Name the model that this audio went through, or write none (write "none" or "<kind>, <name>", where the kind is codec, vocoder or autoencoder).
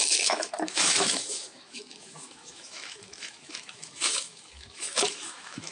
autoencoder, DAC-VAE